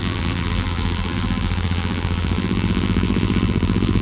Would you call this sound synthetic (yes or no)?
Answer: yes